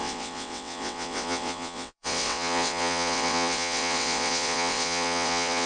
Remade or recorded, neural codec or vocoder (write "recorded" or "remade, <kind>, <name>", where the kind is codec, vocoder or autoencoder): remade, vocoder, WaveNeXt